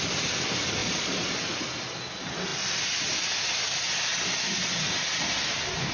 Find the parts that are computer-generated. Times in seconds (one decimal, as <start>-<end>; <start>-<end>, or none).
0.8-1.3